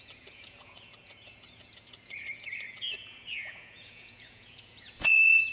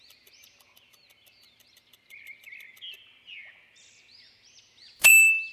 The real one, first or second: second